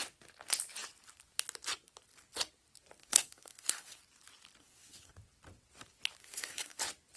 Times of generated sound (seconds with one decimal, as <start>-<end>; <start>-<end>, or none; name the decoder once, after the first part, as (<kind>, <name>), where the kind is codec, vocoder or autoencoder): 3.0-4.0 (codec, SNAC); 4.6-5.1; 6.2-6.8